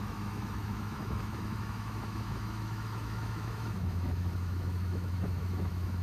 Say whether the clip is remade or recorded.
remade